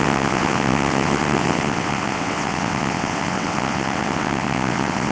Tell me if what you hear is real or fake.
fake